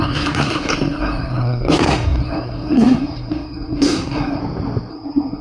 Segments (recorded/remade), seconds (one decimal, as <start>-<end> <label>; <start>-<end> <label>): 0.0-4.4 remade; 4.4-4.9 recorded; 4.9-5.4 remade